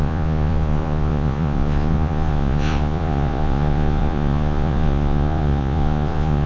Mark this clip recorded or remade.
remade